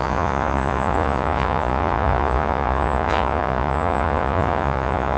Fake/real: fake